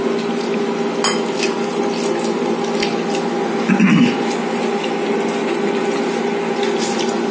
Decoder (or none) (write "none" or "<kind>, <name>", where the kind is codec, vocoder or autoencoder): none